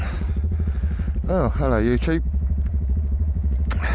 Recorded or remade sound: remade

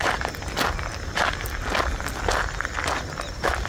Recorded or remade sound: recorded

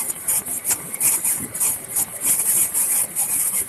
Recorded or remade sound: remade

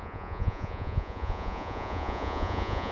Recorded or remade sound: remade